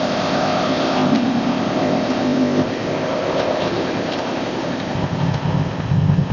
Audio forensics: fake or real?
fake